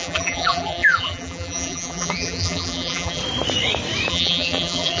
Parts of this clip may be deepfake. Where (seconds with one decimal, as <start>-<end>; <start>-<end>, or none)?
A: 0.0-3.2; 4.1-5.0